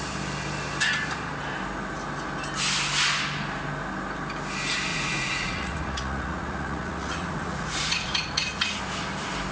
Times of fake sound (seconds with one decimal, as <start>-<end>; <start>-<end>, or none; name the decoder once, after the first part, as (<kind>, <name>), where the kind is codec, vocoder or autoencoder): 4.9-8.8 (vocoder, Vocos)